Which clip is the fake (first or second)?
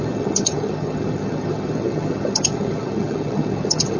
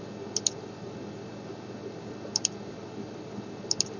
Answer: first